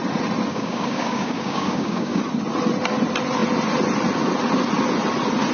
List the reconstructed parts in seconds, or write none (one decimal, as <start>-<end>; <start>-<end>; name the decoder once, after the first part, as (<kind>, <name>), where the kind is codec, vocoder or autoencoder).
0.5-2.2 (codec, DAC)